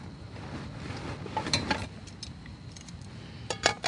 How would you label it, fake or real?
real